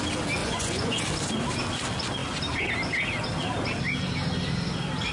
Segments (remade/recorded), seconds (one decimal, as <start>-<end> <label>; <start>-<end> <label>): 0.0-0.4 recorded; 0.4-1.0 remade; 1.0-5.1 recorded